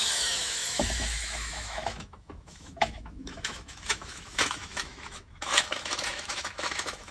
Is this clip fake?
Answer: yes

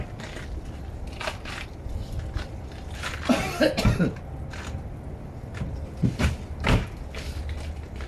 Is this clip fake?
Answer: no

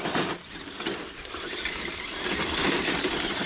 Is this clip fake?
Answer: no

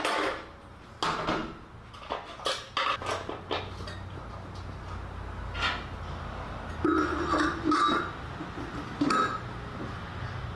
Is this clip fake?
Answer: no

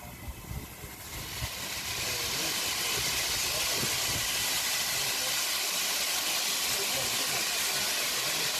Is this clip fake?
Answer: no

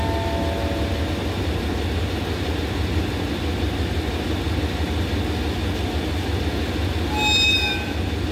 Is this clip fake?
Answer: no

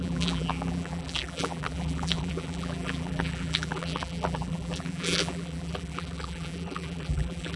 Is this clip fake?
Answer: yes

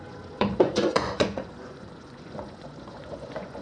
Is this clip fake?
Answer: yes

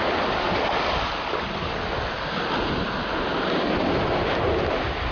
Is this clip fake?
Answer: no